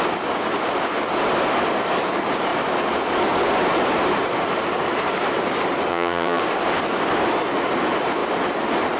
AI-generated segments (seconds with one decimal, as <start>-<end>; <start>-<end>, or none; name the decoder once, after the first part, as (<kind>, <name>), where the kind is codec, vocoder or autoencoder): 5.9-6.4 (vocoder, HiFi-GAN)